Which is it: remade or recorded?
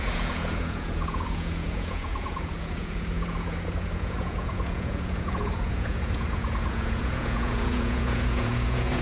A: remade